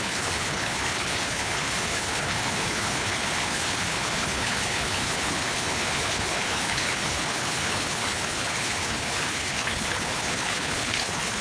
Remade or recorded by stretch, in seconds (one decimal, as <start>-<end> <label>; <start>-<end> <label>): 0.0-11.4 remade